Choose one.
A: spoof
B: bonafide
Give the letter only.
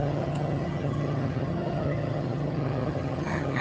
A